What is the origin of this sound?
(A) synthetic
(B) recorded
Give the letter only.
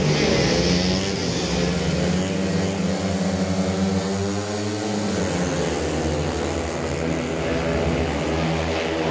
B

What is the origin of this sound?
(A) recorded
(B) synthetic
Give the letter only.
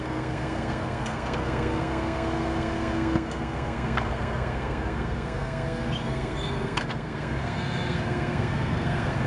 B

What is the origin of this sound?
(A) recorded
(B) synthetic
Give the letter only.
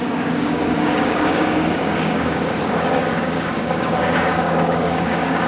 B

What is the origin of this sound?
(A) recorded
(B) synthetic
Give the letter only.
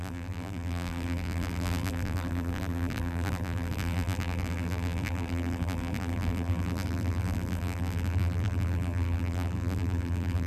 B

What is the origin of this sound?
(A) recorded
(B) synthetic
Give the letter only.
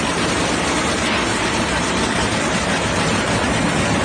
A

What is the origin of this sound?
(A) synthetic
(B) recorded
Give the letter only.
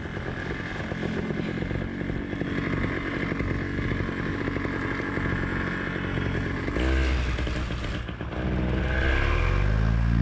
B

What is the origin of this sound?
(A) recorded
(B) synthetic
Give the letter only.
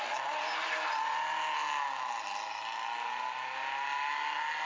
A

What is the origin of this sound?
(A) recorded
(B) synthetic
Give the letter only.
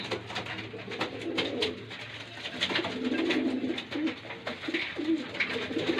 A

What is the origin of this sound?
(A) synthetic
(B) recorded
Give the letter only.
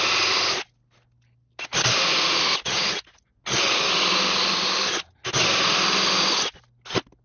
B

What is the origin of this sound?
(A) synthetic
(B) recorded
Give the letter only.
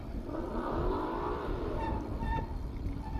B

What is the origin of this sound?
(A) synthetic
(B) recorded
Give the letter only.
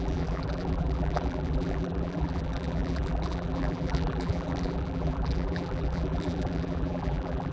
A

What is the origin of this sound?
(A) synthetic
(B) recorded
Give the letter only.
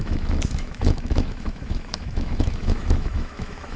A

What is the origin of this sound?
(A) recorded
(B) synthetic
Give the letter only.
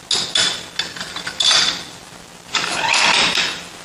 A